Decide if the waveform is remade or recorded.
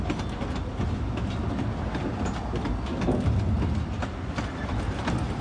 recorded